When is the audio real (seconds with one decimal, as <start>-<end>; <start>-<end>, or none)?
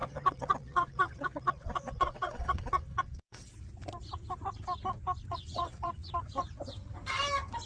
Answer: 3.5-5.3; 6.1-7.7